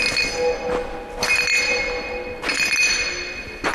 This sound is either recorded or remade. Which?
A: recorded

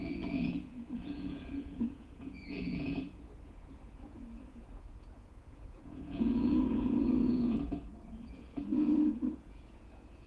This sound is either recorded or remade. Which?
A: remade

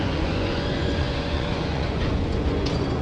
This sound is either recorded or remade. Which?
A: remade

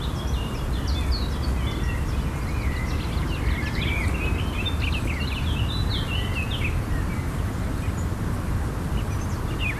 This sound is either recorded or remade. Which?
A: recorded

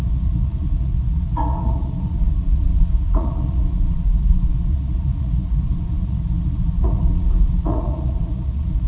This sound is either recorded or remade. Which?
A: remade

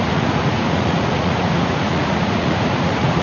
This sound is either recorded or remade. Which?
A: remade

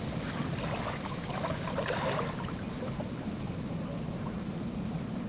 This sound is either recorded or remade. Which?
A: recorded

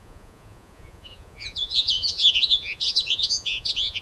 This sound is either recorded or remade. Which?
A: remade